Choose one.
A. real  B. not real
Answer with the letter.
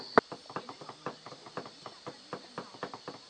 A